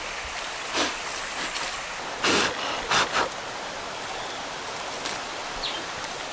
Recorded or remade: recorded